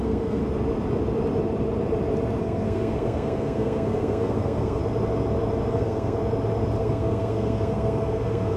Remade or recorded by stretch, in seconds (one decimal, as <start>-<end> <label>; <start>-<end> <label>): 0.0-0.4 remade; 0.4-2.4 recorded; 2.4-4.8 remade; 4.8-5.7 recorded; 5.7-6.2 remade; 6.2-6.8 recorded; 6.8-8.6 remade